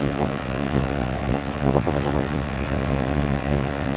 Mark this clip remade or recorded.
remade